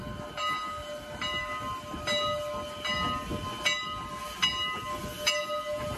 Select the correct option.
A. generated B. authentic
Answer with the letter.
B